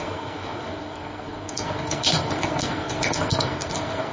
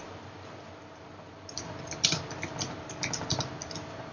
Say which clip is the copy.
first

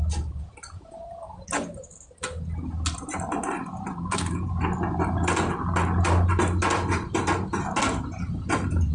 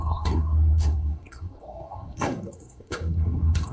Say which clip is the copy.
second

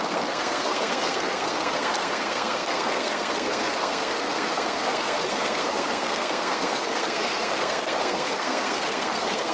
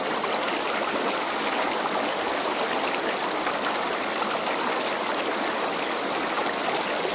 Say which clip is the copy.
first